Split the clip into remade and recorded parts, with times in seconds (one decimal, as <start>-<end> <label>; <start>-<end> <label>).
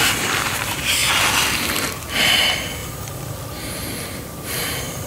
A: 0.0-5.1 recorded